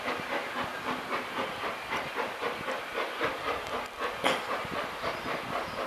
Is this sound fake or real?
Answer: real